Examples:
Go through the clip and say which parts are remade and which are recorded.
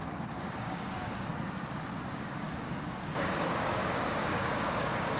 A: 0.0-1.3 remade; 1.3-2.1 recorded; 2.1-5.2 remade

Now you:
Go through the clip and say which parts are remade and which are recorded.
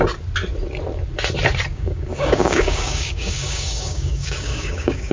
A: 0.0-1.7 recorded; 1.7-5.1 remade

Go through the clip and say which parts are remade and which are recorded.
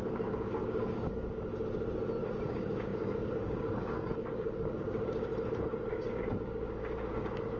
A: 0.0-1.5 remade; 1.5-2.3 recorded; 2.3-5.3 remade; 5.3-5.9 recorded; 5.9-7.6 remade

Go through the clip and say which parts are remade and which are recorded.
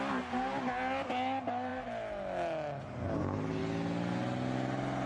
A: 0.0-5.1 recorded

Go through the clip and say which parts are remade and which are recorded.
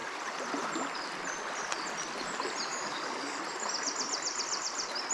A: 0.0-2.7 recorded; 2.7-3.4 remade; 3.4-5.1 recorded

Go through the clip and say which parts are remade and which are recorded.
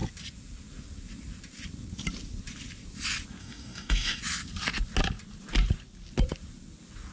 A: 0.0-3.4 recorded; 3.4-4.2 remade; 4.2-7.1 recorded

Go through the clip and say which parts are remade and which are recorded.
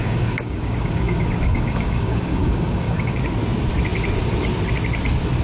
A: 0.0-3.2 remade; 3.2-5.4 recorded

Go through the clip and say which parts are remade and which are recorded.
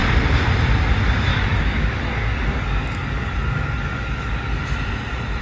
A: 0.0-1.3 recorded; 1.3-4.5 remade; 4.5-5.4 recorded